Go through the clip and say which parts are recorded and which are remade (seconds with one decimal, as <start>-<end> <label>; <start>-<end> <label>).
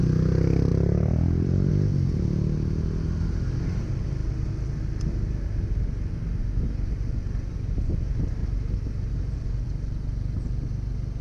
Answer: 0.0-0.7 recorded; 0.7-1.7 remade; 1.7-8.4 recorded; 8.4-9.5 remade; 9.5-11.2 recorded